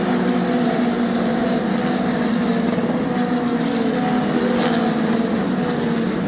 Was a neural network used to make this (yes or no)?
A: no